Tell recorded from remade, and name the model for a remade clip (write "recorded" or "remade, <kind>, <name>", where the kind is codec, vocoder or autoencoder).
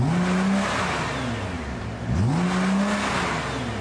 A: recorded